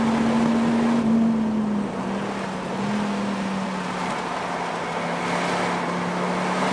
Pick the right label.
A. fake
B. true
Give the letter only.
B